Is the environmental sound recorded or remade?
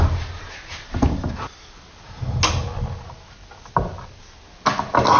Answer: recorded